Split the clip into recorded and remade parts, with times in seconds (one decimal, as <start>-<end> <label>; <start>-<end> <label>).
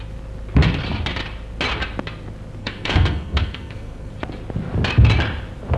0.0-2.6 recorded; 2.6-4.1 remade; 4.1-5.8 recorded